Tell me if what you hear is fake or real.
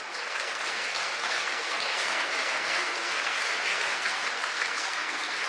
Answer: fake